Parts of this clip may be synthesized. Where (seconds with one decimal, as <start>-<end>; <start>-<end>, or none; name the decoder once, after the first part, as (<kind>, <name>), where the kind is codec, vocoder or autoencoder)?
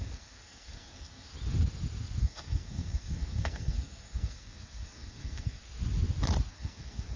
0.0-1.3 (codec, SNAC); 2.2-5.6; 6.5-7.2